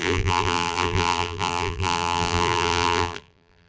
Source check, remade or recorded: remade